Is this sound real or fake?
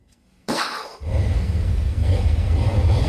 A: fake